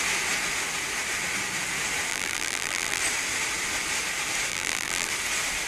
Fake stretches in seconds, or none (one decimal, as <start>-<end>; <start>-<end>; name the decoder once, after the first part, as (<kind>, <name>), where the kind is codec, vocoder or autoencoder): 2.1-3.0 (vocoder, BigVGAN v2); 4.5-5.1